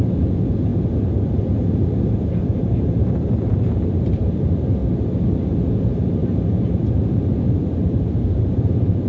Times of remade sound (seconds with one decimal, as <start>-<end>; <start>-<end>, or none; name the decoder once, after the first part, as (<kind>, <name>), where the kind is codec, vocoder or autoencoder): 0.0-4.8 (vocoder, BigVGAN v2); 5.8-9.1